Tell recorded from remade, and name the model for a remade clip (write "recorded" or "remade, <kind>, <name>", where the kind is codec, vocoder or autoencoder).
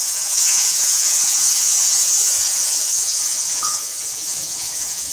remade, vocoder, Vocos